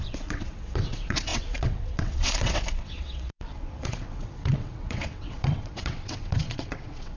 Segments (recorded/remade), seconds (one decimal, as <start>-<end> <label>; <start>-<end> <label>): 0.0-7.2 remade